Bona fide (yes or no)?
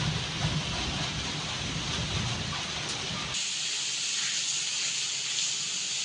yes